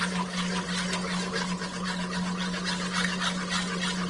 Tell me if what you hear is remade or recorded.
recorded